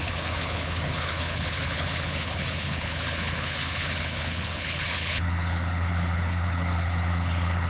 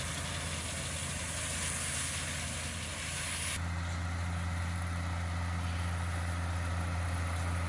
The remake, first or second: first